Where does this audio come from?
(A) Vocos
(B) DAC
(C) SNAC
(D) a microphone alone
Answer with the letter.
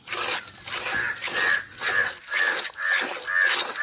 D